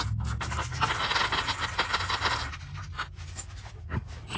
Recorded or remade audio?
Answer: recorded